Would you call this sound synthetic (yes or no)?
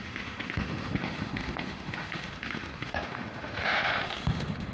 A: yes